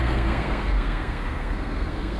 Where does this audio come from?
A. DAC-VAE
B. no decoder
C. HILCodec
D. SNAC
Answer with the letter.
D